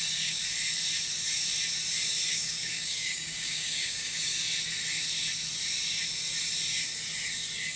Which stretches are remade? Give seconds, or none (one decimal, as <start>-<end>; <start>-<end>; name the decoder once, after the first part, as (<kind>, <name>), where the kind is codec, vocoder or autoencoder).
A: 0.0-0.4 (codec, DAC); 2.3-4.3